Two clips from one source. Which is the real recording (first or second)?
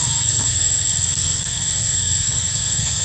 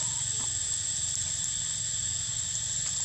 second